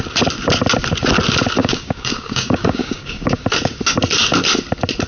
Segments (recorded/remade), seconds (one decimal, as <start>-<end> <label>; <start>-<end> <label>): 0.0-1.6 recorded; 1.6-3.4 remade; 3.4-5.1 recorded